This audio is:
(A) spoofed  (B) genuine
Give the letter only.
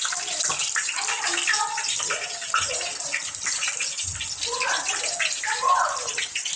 B